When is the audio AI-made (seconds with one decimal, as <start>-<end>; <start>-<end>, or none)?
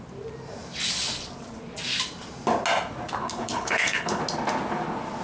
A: 3.2-4.2